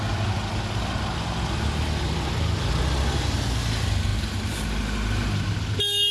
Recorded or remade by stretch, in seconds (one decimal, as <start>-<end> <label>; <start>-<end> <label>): 0.0-6.1 recorded